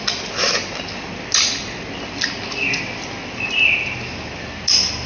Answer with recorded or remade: recorded